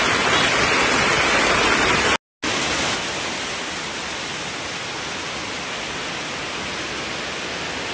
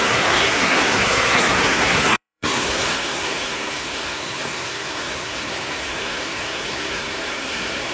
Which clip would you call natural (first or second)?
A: first